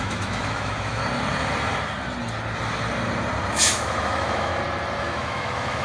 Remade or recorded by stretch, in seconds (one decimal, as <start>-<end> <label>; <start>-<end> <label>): 0.0-1.0 remade; 1.0-3.5 recorded; 3.5-4.5 remade; 4.5-5.0 recorded; 5.0-5.8 remade